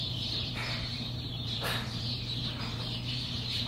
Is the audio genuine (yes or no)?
no